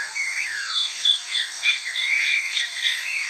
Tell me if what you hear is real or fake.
fake